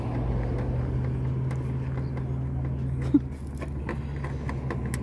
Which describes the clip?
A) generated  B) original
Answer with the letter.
B